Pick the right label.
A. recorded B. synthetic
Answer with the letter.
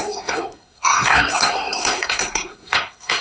B